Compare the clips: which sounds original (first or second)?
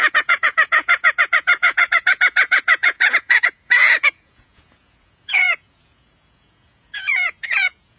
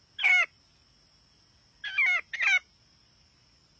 second